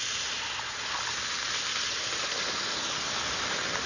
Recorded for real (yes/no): yes